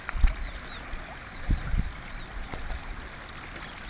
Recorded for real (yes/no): yes